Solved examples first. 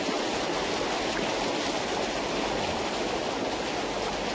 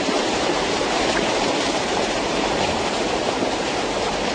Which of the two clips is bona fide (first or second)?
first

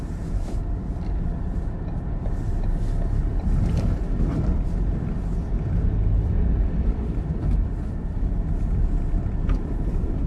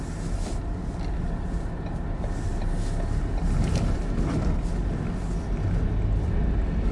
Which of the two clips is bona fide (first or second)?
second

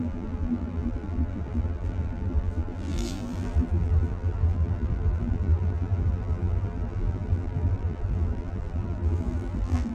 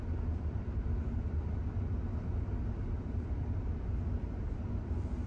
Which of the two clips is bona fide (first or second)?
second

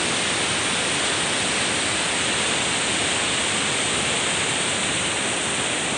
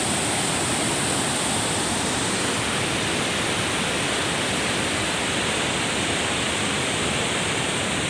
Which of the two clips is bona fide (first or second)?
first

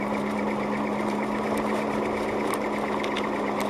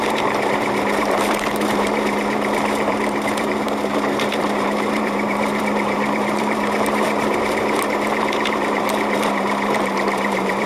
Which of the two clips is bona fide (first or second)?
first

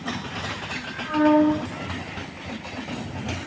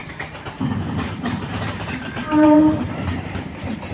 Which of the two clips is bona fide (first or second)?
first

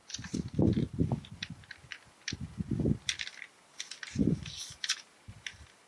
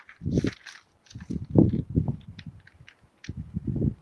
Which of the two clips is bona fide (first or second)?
first